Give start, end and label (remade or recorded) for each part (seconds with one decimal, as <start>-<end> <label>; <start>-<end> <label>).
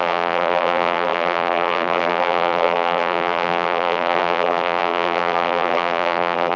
0.0-6.6 remade